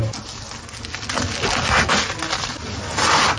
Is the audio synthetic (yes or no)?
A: no